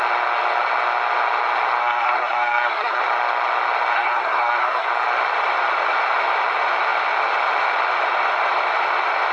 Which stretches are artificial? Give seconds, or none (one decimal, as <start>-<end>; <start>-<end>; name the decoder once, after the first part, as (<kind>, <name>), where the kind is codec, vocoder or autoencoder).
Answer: 1.8-3.0 (codec, SNAC); 3.9-4.9